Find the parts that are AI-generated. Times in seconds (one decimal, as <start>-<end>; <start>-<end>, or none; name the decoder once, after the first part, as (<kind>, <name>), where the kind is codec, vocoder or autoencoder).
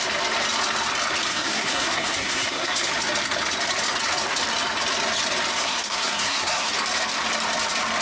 1.3-2.9 (codec, SNAC); 5.5-6.7